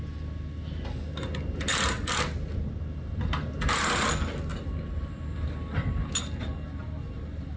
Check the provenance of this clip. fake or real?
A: real